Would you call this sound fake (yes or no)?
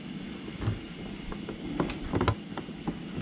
no